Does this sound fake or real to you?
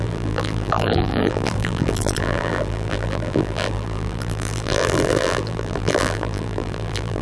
fake